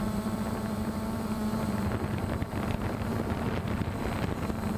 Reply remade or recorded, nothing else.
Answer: remade